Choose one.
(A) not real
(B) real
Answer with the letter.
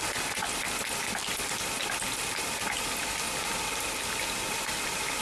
B